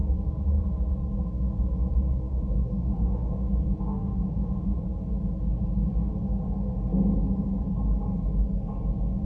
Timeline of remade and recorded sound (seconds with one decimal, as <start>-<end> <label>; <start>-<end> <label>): 0.0-2.3 recorded; 2.3-3.5 remade; 3.5-3.9 recorded; 3.9-4.8 remade; 4.8-9.2 recorded